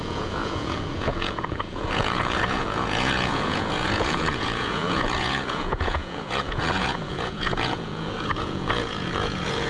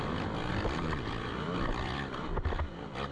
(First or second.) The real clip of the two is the second